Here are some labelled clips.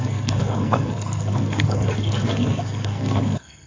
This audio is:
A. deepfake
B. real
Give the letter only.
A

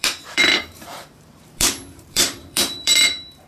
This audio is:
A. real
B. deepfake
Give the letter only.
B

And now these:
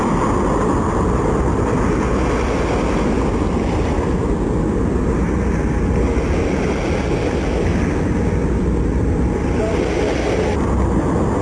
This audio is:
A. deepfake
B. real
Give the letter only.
B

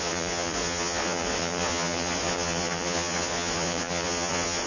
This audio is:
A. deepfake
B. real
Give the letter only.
A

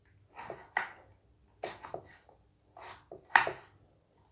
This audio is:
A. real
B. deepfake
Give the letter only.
A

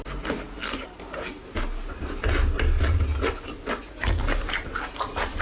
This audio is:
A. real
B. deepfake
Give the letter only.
A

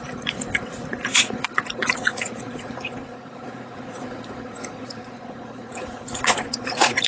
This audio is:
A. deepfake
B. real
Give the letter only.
A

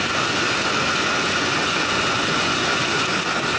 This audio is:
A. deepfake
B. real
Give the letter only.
A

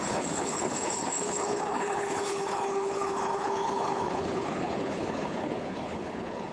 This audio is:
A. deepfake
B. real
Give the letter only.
A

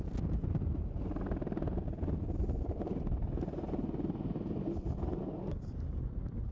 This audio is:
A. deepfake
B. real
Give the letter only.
B